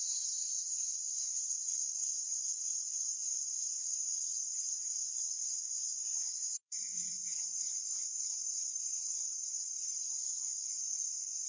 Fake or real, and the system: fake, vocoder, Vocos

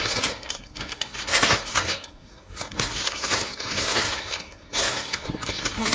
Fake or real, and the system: fake, codec, SNAC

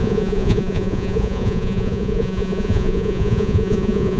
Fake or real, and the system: fake, vocoder, Vocos